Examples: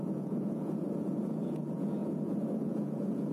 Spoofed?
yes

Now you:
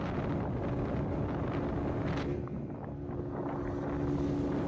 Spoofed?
no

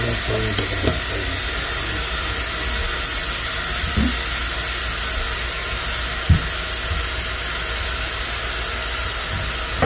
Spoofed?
no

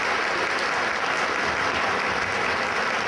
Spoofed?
no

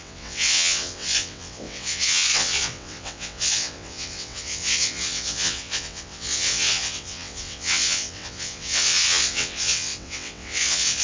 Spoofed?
yes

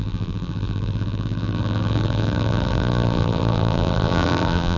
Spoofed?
yes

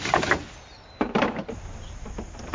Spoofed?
yes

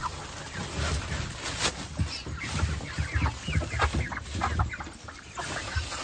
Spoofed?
no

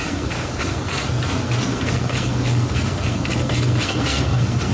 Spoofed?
yes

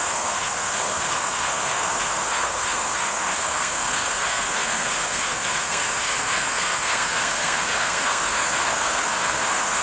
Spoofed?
yes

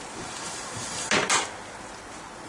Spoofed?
yes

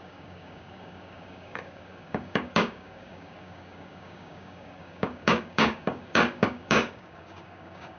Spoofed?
yes